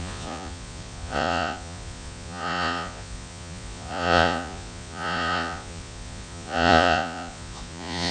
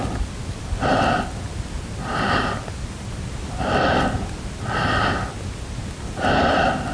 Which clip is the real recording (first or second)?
second